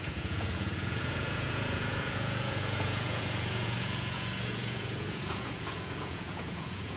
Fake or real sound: fake